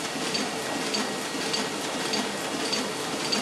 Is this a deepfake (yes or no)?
no